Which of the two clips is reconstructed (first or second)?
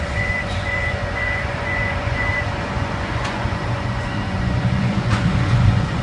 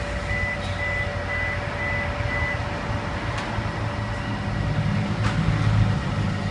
first